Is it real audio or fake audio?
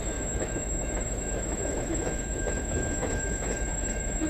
fake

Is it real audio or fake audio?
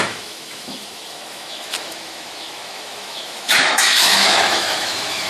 fake